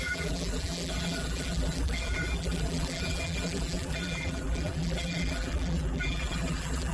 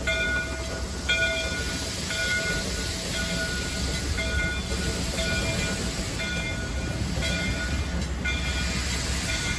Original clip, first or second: second